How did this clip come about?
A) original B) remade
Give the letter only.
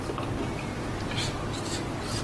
A